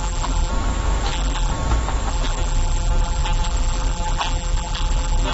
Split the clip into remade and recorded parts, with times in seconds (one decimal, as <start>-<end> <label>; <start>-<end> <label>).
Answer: 0.0-0.5 remade; 0.5-1.1 recorded; 1.1-1.5 remade; 1.5-2.1 recorded; 2.1-5.3 remade